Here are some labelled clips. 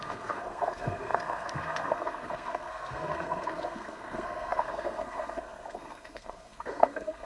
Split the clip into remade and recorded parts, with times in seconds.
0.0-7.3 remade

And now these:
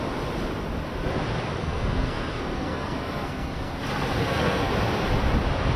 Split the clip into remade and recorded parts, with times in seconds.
0.0-1.6 recorded; 1.6-3.8 remade; 3.8-4.2 recorded; 4.2-4.7 remade; 4.7-5.8 recorded

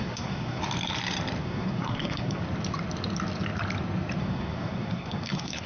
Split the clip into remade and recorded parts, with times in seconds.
0.0-0.6 remade; 0.6-1.4 recorded; 1.4-2.4 remade; 2.4-4.2 recorded; 4.2-5.7 remade